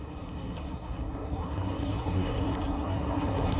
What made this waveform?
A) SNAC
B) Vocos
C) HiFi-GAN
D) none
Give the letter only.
A